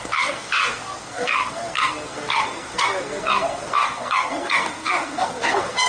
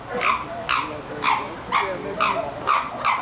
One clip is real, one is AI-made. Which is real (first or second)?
second